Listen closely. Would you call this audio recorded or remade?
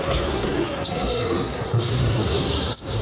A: remade